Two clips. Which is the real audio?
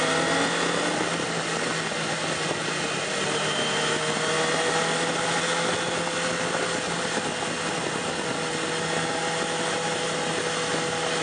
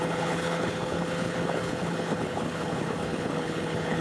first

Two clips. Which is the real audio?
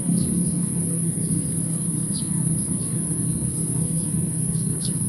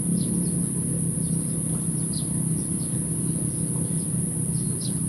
second